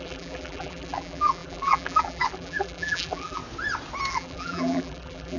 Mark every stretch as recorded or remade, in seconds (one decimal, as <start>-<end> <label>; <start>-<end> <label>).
0.0-3.4 remade; 3.4-4.1 recorded; 4.1-5.4 remade